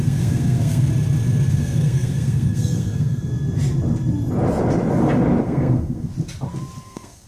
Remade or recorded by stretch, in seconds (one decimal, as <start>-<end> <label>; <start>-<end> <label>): 0.0-0.9 remade; 0.9-1.5 recorded; 1.5-3.3 remade; 3.3-5.4 recorded; 5.4-6.1 remade; 6.1-6.8 recorded; 6.8-7.3 remade